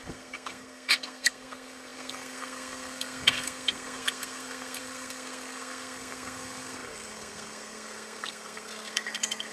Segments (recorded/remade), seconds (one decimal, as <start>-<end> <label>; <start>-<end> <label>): 0.0-9.5 remade